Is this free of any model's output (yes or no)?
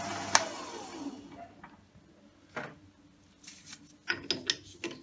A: yes